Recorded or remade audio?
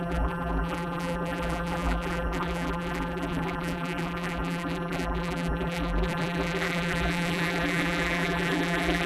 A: remade